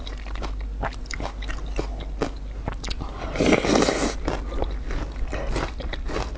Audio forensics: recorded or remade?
recorded